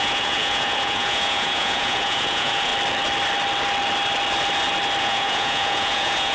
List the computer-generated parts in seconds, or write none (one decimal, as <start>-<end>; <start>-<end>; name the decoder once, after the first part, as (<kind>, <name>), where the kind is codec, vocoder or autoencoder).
0.0-2.7 (vocoder, Vocos); 5.0-6.3